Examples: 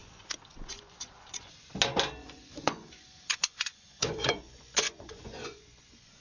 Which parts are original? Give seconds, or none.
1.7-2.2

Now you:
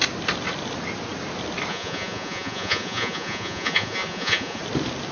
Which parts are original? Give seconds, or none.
0.0-1.7; 4.6-5.1

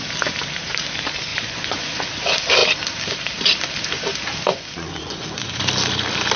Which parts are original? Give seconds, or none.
0.0-1.3; 2.0-4.5; 5.6-6.4

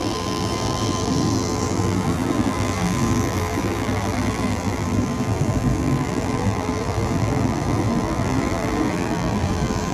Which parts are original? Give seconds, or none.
none

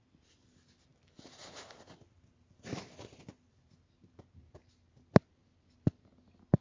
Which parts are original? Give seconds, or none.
0.0-6.6

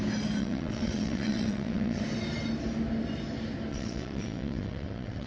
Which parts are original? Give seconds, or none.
0.0-0.4; 2.0-3.7

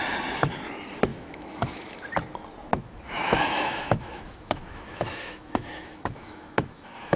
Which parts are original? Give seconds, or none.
0.0-1.1; 2.0-2.7

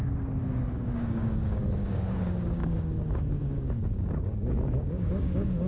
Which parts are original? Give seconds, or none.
none